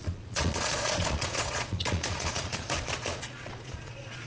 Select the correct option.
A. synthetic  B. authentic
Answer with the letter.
A